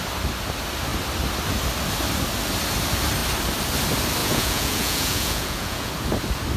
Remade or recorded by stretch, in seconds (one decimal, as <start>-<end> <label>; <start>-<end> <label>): 0.0-4.2 recorded; 4.2-5.9 remade; 5.9-6.6 recorded

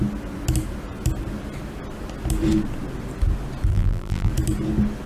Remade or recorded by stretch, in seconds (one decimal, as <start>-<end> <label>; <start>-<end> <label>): 0.0-3.7 recorded; 3.7-4.3 remade; 4.3-5.1 recorded